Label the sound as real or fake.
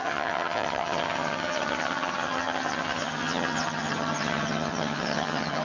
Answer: fake